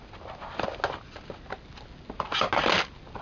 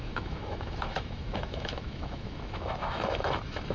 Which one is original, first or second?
first